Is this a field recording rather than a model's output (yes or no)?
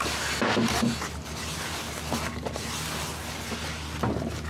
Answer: yes